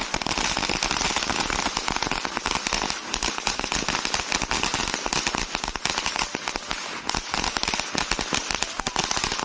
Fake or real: real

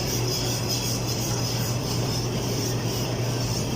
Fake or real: fake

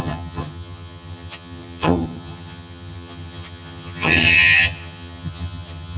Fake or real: fake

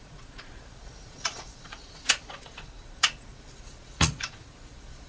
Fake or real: fake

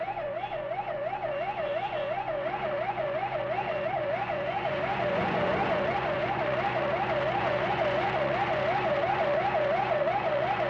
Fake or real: fake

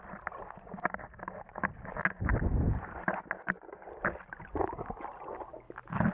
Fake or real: real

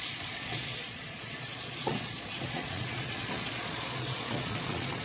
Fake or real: fake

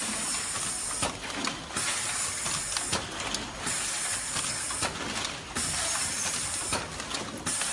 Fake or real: real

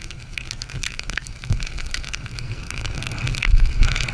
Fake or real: fake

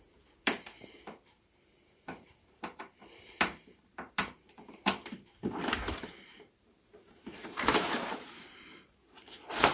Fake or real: fake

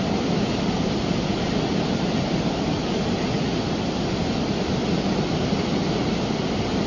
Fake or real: real